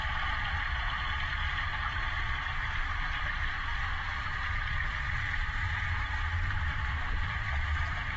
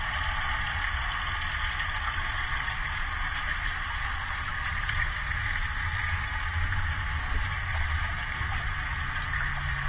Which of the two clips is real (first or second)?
second